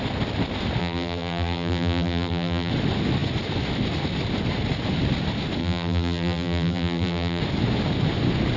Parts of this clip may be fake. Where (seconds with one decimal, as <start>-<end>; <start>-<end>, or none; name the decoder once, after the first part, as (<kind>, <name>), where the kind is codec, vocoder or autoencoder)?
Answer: 0.8-2.7 (vocoder, BigVGAN v2); 5.6-7.4

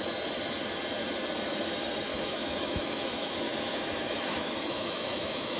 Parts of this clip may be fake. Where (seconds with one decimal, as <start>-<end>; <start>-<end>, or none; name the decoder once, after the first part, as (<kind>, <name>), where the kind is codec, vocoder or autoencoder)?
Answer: 2.1-5.6 (autoencoder, DAC-VAE)

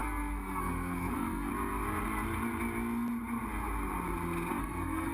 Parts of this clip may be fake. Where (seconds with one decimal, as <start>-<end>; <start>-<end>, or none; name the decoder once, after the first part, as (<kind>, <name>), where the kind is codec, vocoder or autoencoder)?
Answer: 0.0-1.5 (codec, SNAC); 4.6-5.1

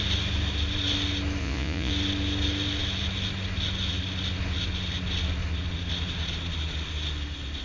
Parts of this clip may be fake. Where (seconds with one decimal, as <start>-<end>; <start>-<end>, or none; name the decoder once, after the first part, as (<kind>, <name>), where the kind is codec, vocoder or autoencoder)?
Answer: 1.4-1.9 (vocoder, Vocos)